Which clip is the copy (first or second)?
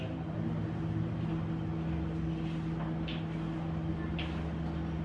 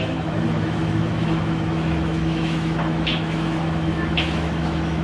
second